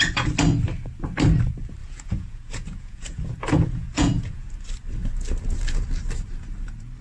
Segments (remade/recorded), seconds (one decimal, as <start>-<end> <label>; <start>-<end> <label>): 0.0-1.8 recorded; 1.8-4.5 remade; 4.5-7.0 recorded